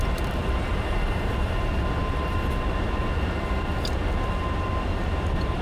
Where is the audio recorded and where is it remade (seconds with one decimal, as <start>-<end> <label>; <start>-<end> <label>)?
0.0-5.6 recorded